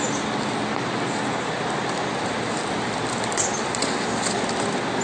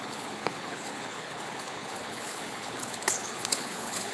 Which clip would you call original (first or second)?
first